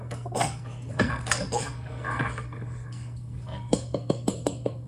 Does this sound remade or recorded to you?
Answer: remade